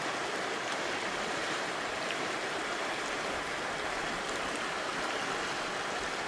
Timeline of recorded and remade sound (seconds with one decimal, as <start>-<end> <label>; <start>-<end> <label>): 0.0-4.9 remade; 4.9-6.3 recorded